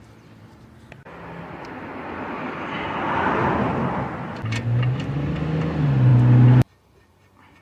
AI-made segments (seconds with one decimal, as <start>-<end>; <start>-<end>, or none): none

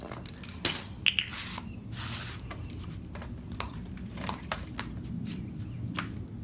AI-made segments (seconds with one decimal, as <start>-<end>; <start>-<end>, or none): none

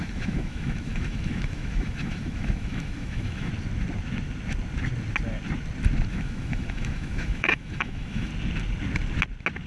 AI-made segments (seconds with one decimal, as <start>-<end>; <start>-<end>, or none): 0.0-3.5; 6.1-8.3

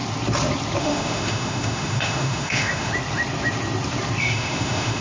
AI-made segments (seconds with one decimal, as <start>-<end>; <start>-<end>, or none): 0.8-2.9; 4.2-5.0

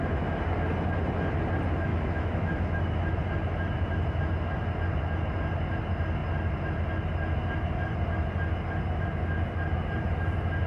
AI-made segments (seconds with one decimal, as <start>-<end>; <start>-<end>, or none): 1.9-3.1

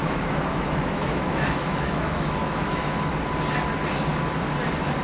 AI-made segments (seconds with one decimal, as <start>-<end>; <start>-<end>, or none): 0.0-3.0

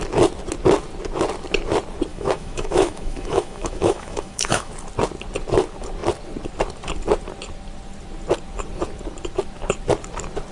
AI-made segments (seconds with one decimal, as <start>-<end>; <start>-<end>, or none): 2.1-4.7